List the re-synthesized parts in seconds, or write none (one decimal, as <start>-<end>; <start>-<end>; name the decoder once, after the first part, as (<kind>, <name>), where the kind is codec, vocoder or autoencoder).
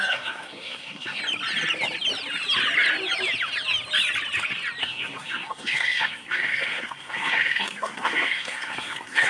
0.0-1.2 (codec, SNAC); 4.8-9.3